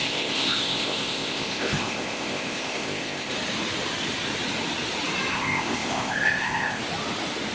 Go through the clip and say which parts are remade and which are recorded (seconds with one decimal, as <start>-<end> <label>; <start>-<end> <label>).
0.0-3.3 remade; 3.3-5.3 recorded; 5.3-6.8 remade; 6.8-7.5 recorded